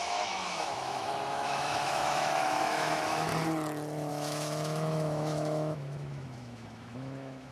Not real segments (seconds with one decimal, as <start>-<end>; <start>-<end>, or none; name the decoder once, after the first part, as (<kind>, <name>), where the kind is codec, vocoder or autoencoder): 0.0-3.3 (autoencoder, DAC-VAE); 4.1-7.5